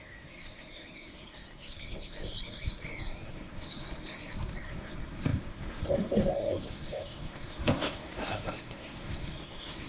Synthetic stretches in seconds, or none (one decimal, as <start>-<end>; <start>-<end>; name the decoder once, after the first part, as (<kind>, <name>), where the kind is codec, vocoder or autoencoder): 0.0-9.9 (codec, SNAC)